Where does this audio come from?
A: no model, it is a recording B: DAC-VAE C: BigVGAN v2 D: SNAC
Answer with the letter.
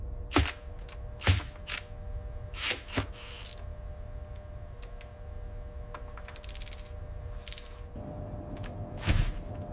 A